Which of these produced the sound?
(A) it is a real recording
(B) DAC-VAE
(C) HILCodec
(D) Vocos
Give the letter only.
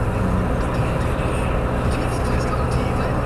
A